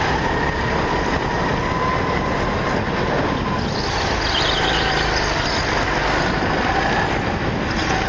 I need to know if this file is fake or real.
real